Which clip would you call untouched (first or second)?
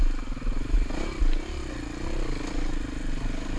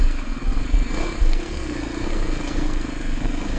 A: first